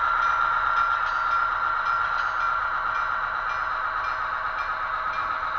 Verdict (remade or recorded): recorded